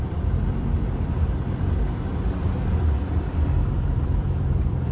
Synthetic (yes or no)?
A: yes